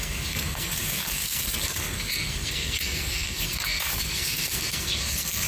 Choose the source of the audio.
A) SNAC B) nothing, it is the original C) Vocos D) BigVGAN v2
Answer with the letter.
A